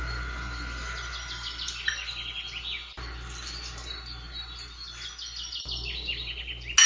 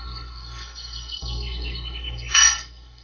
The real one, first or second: first